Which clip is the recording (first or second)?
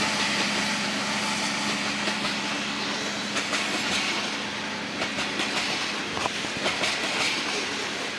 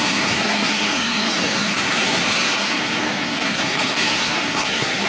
first